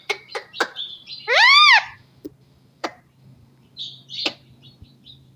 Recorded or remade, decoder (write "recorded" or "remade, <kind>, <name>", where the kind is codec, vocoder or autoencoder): remade, vocoder, BigVGAN v2